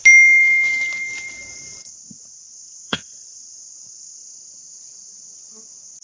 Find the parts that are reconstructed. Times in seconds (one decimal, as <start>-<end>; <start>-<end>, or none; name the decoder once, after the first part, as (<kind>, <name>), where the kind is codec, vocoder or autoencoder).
0.7-1.9 (vocoder, BigVGAN v2); 2.5-3.7